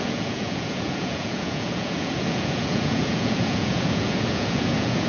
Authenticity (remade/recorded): remade